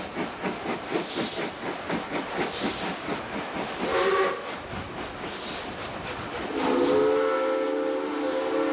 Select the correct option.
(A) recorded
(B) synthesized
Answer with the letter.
A